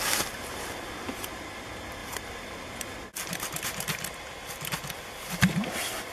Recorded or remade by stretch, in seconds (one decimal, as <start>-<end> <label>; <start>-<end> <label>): 0.0-2.0 recorded; 2.0-2.6 remade; 2.6-6.1 recorded